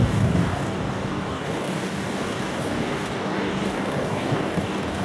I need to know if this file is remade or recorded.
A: remade